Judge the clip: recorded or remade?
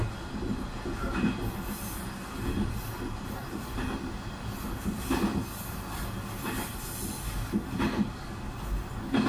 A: recorded